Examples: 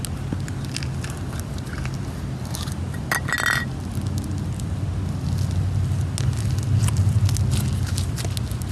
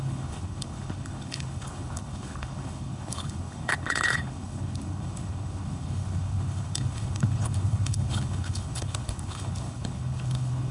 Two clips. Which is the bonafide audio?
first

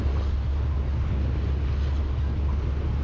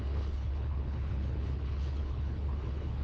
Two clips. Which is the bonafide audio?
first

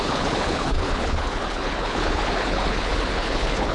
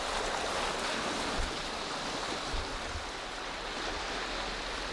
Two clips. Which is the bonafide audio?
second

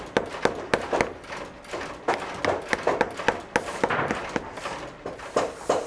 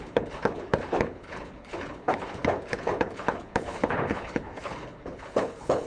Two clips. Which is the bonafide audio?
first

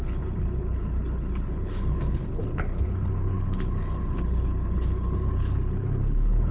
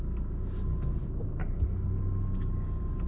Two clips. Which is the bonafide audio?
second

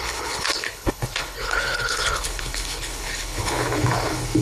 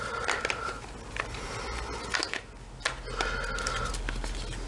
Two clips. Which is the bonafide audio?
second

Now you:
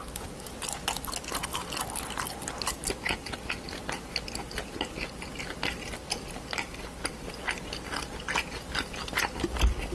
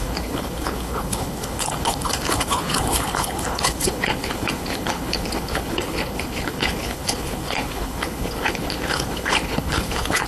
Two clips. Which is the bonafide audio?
first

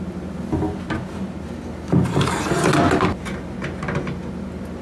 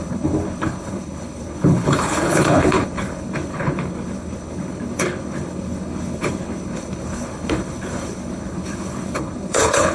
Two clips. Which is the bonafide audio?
first